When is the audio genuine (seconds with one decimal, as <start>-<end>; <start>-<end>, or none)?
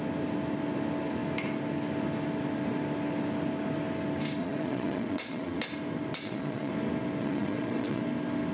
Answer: 0.0-4.4; 5.6-6.1; 6.7-7.2; 8.0-8.5